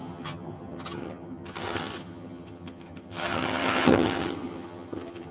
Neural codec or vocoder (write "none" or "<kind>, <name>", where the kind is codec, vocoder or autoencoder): vocoder, HiFi-GAN